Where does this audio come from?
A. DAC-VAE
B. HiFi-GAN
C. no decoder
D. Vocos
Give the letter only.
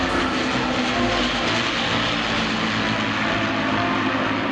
C